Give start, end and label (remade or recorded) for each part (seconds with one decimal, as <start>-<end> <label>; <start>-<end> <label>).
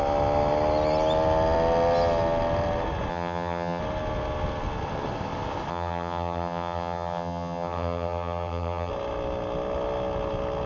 0.0-3.1 recorded; 3.1-3.8 remade; 3.8-5.7 recorded; 5.7-8.9 remade; 8.9-10.7 recorded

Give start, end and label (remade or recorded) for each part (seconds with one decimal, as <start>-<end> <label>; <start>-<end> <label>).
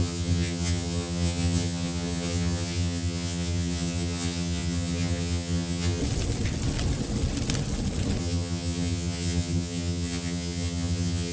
0.0-6.0 remade; 6.0-8.2 recorded; 8.2-11.3 remade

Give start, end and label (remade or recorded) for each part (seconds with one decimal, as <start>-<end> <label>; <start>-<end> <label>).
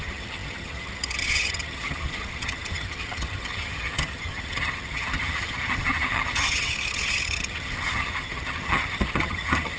0.0-9.8 remade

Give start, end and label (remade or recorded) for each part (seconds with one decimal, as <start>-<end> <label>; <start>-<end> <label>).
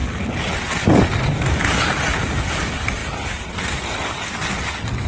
0.0-5.1 recorded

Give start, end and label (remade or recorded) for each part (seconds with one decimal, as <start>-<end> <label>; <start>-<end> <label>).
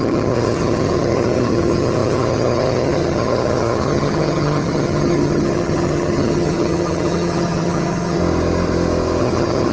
0.0-8.2 remade; 8.2-9.2 recorded; 9.2-9.7 remade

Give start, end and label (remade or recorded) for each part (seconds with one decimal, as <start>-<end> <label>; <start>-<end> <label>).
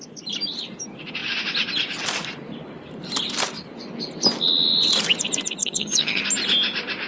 0.0-5.6 recorded; 5.6-6.2 remade; 6.2-7.1 recorded